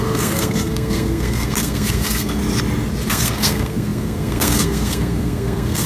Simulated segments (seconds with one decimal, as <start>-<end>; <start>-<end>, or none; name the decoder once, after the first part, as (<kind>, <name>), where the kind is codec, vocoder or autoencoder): 0.0-2.4 (codec, SNAC); 3.1-5.9